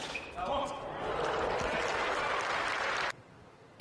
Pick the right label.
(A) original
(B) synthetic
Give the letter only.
A